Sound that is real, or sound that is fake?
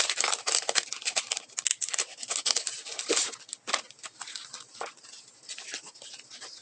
real